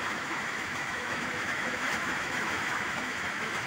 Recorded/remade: remade